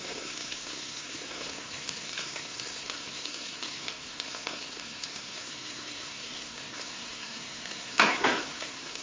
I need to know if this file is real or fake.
fake